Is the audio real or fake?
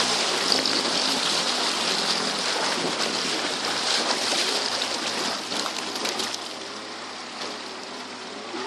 real